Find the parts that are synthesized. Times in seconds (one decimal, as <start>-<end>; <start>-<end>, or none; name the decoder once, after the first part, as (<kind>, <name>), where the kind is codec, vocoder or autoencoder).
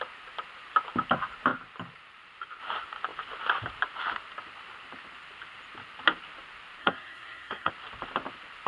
6.8-7.7 (codec, SNAC)